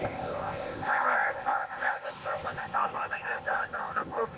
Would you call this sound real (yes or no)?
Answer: no